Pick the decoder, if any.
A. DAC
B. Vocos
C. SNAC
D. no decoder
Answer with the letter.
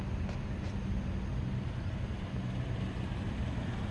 D